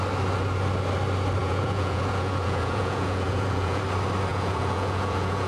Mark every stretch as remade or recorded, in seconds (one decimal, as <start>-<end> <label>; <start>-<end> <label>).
0.0-1.4 recorded; 1.4-3.8 remade; 3.8-4.3 recorded; 4.3-5.5 remade